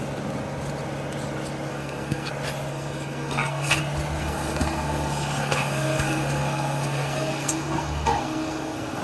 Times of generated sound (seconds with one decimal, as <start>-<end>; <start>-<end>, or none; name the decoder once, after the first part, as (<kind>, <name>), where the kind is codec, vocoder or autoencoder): 1.7-2.3 (codec, SNAC); 2.7-3.8; 4.2-9.0